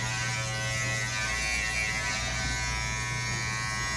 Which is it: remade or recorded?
recorded